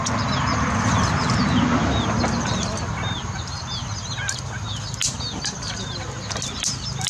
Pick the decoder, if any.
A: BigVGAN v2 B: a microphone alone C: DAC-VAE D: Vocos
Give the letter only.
B